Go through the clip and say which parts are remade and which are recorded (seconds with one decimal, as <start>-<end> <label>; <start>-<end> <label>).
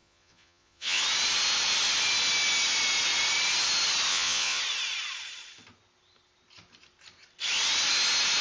0.0-1.0 remade; 1.0-4.1 recorded; 4.1-4.6 remade; 4.6-8.4 recorded